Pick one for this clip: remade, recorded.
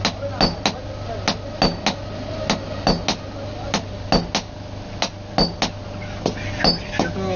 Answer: recorded